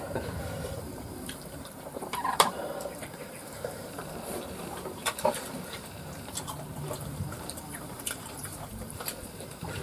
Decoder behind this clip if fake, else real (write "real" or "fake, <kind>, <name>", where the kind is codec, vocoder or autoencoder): fake, vocoder, BigVGAN v2